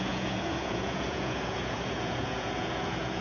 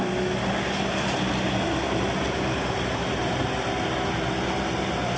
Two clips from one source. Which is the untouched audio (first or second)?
second